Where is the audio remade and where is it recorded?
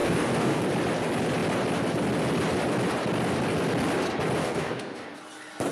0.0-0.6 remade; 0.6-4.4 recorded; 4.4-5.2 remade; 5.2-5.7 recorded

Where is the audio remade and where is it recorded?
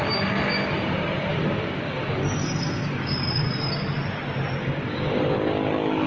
0.0-1.3 recorded; 1.3-3.5 remade; 3.5-4.6 recorded; 4.6-5.2 remade; 5.2-6.1 recorded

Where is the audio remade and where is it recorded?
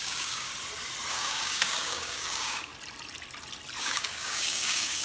0.0-0.5 remade; 0.5-1.1 recorded; 1.1-2.7 remade; 2.7-3.8 recorded; 3.8-5.0 remade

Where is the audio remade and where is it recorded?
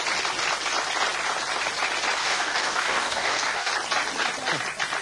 0.0-2.2 recorded; 2.2-3.7 remade; 3.7-5.0 recorded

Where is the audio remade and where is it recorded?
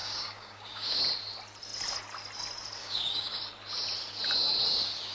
0.0-1.0 remade; 1.0-2.8 recorded; 2.8-3.4 remade; 3.4-5.1 recorded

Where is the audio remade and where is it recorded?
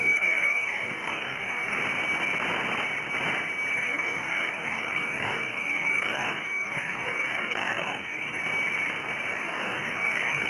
0.0-1.8 remade; 1.8-3.7 recorded; 3.7-8.4 remade; 8.4-9.3 recorded; 9.3-10.5 remade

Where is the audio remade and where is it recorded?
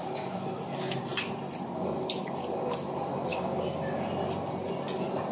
0.0-3.3 recorded; 3.3-4.1 remade; 4.1-5.3 recorded